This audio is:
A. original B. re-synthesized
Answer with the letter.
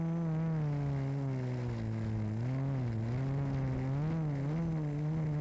A